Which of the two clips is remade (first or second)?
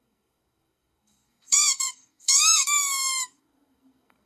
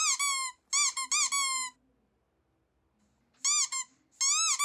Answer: first